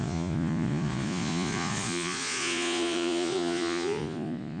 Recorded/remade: remade